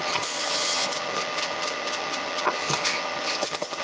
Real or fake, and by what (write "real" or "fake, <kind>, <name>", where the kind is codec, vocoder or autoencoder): fake, vocoder, HiFi-GAN